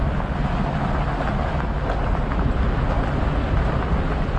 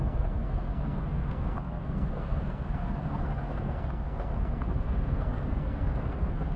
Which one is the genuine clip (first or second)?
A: first